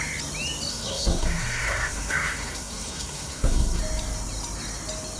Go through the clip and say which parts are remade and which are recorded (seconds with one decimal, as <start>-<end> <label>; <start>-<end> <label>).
0.0-0.7 recorded; 0.7-3.8 remade; 3.8-5.2 recorded